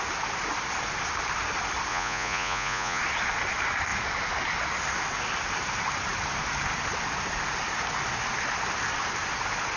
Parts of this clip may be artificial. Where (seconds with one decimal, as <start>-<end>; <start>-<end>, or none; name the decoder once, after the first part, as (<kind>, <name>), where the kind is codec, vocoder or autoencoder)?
1.9-3.0 (vocoder, Vocos)